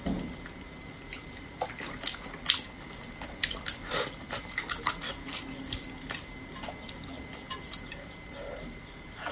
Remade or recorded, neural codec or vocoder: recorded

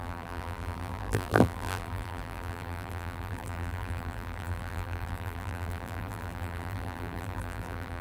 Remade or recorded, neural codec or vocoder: remade, vocoder, BigVGAN v2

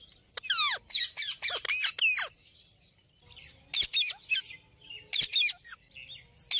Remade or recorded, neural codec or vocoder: recorded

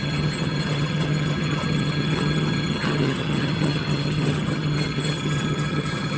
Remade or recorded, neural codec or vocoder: remade, vocoder, HiFi-GAN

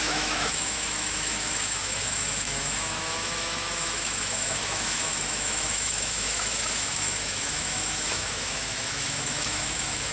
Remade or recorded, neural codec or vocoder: remade, autoencoder, DAC-VAE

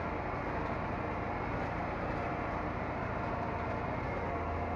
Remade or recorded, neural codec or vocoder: recorded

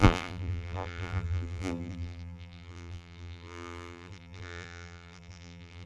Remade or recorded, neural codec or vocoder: remade, vocoder, BigVGAN v2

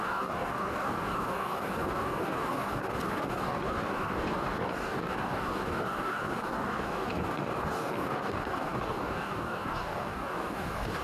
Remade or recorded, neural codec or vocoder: remade, codec, DAC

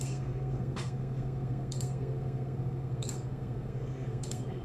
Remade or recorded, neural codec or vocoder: remade, codec, SNAC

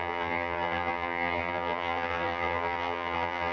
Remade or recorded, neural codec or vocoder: remade, vocoder, BigVGAN v2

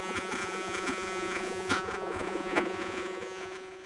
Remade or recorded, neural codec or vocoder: remade, vocoder, Vocos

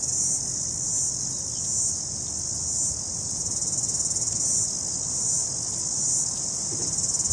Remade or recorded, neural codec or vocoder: recorded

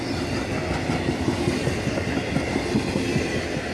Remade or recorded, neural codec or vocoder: recorded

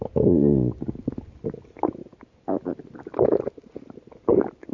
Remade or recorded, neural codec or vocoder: recorded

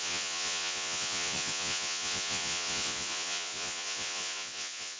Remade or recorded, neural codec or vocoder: remade, vocoder, Vocos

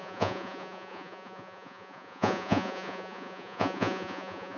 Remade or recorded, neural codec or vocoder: remade, vocoder, Vocos